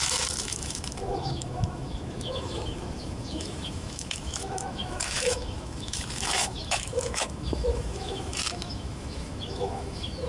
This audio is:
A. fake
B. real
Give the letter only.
A